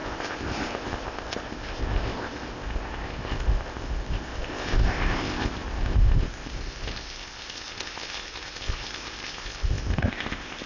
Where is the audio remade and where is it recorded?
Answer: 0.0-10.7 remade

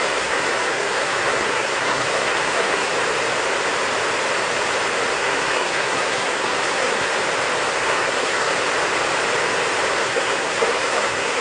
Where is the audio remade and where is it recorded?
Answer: 0.0-2.9 remade; 2.9-5.1 recorded; 5.1-7.1 remade; 7.1-7.7 recorded; 7.7-8.5 remade; 8.5-9.9 recorded; 9.9-11.4 remade

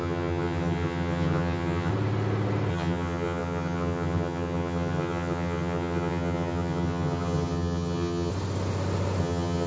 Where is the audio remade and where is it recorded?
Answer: 0.0-1.9 remade; 1.9-2.7 recorded; 2.7-8.3 remade; 8.3-9.2 recorded; 9.2-9.7 remade

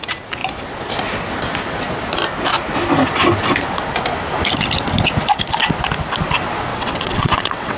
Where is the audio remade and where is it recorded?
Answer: 0.0-6.7 recorded; 6.7-7.8 remade